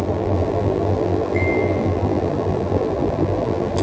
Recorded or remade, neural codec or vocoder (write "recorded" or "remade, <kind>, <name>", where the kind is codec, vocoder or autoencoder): remade, vocoder, BigVGAN v2